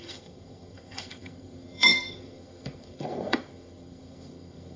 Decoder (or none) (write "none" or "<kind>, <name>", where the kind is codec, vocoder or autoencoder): codec, SNAC